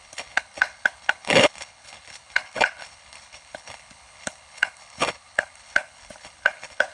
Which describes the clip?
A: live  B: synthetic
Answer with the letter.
B